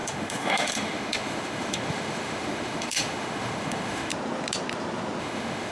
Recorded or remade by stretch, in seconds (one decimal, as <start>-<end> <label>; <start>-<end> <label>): 0.0-4.1 remade; 4.1-5.2 recorded; 5.2-5.7 remade